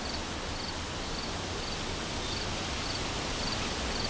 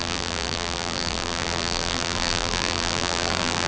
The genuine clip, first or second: first